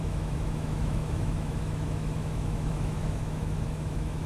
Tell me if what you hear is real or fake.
fake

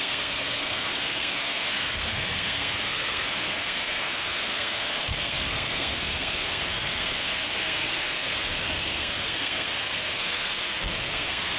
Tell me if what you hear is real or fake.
fake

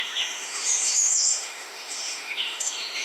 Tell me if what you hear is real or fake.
fake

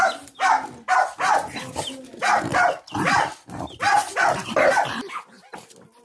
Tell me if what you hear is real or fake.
real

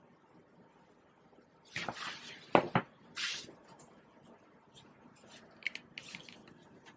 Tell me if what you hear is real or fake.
real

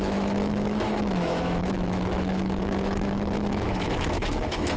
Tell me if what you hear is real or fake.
fake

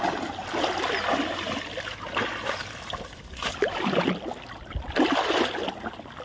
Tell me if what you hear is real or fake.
real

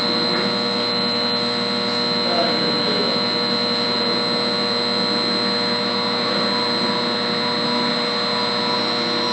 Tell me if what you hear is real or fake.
real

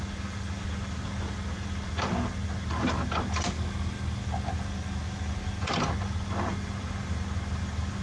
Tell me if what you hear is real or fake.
real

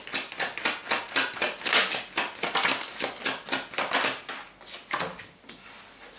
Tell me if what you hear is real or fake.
real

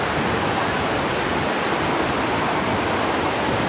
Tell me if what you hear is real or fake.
real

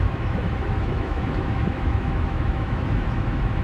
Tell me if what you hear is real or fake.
fake